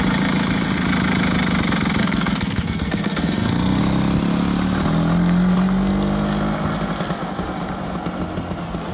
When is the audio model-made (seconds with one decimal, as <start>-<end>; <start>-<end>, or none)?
2.0-3.8